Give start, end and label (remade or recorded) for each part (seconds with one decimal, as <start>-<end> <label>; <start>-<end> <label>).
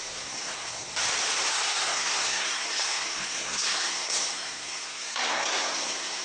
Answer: 0.0-0.9 remade; 0.9-1.5 recorded; 1.5-6.2 remade